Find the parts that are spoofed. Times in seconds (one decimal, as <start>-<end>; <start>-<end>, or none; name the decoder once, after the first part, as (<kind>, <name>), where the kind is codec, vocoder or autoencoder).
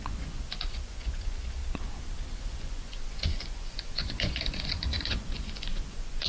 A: 0.0-1.6 (vocoder, Vocos); 2.4-6.3